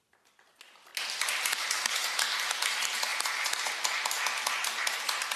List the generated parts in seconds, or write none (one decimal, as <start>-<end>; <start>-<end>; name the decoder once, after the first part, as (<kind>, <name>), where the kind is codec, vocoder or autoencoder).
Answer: none